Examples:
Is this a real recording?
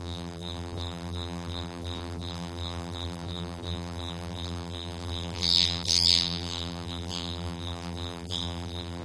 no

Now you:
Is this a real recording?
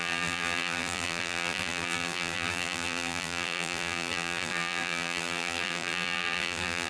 no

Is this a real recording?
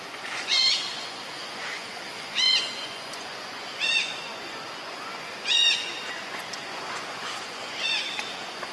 no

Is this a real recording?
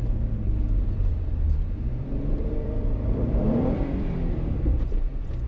no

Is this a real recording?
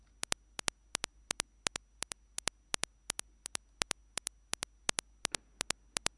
yes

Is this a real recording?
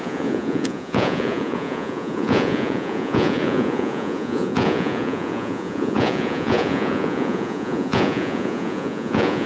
no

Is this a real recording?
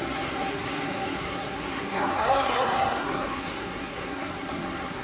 no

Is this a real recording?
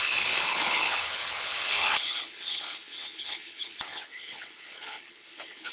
no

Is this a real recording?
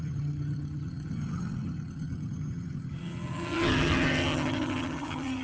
no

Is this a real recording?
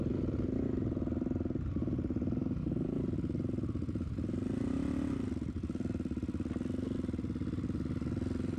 yes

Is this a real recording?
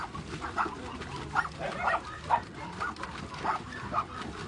no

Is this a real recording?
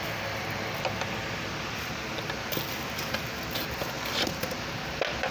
yes